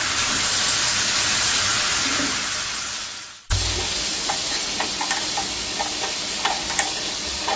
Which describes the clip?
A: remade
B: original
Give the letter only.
B